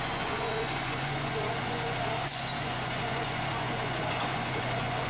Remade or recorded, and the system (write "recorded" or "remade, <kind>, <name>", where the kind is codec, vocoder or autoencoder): remade, vocoder, Vocos